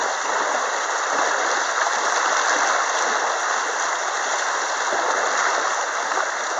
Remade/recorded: recorded